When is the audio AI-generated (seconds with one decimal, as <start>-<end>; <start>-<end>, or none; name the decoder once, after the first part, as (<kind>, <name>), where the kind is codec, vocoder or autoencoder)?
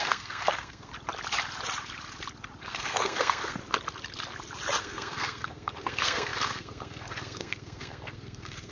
0.0-0.9 (codec, SNAC); 2.6-3.6; 4.8-8.7